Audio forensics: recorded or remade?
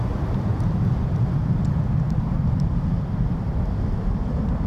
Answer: remade